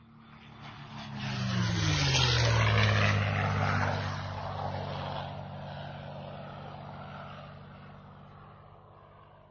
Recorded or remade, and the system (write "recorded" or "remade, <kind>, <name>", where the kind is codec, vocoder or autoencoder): recorded